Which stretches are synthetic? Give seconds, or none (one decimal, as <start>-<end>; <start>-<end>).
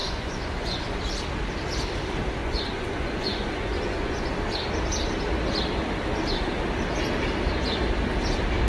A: 0.0-1.0; 2.4-4.3